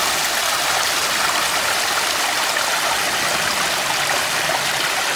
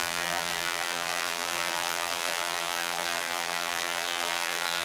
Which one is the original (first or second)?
first